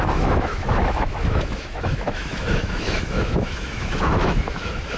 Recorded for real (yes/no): no